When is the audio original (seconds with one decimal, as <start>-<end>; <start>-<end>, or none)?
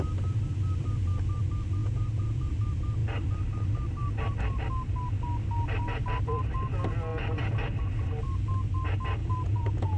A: 0.0-1.8; 2.5-9.2